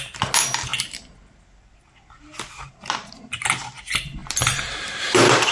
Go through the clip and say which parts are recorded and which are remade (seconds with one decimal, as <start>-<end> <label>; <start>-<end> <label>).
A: 0.0-5.5 recorded